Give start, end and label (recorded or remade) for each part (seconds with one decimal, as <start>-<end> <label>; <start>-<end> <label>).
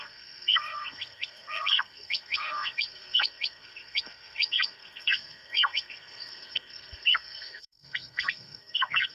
0.0-9.1 remade